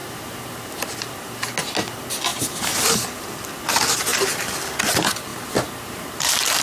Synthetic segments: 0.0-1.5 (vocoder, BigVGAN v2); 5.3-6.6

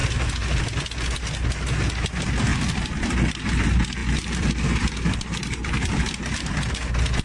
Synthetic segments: 0.0-0.6 (vocoder, BigVGAN v2); 2.5-3.1; 4.0-6.7

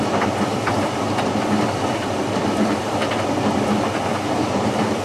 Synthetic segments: 0.0-5.0 (vocoder, BigVGAN v2)

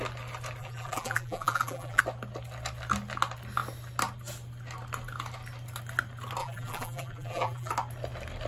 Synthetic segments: 0.6-2.0 (vocoder, BigVGAN v2); 6.4-7.7

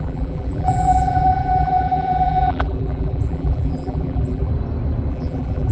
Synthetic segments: 0.0-4.5 (vocoder, BigVGAN v2); 5.1-5.7

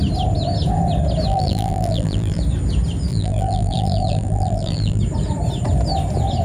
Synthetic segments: 1.3-2.4 (vocoder, BigVGAN v2); 3.1-5.0

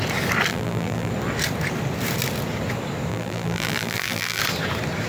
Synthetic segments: 0.5-1.1 (vocoder, BigVGAN v2); 3.1-4.4

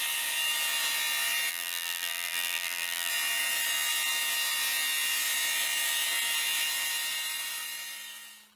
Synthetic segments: 1.5-3.1 (vocoder, BigVGAN v2)